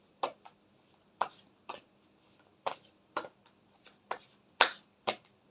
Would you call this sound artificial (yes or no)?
no